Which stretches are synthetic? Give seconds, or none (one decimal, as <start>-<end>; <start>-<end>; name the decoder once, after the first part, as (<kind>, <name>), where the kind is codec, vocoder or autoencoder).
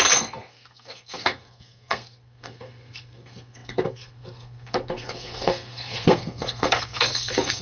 0.0-7.6 (codec, SNAC)